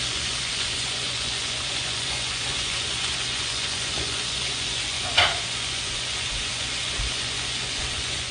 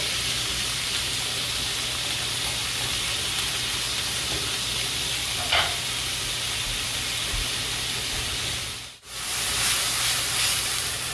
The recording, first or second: second